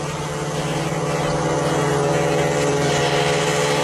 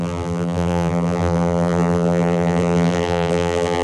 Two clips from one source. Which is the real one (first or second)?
first